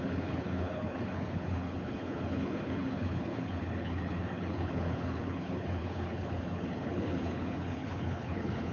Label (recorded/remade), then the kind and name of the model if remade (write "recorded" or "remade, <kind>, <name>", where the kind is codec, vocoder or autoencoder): remade, codec, HILCodec